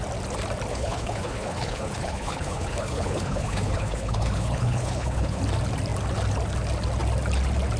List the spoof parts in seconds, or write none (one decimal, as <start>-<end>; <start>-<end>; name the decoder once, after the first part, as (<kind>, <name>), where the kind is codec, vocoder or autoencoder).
0.7-5.4 (codec, HILCodec)

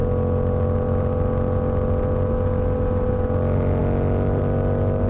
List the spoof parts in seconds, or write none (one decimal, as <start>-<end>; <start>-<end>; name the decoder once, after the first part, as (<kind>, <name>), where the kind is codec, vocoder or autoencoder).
none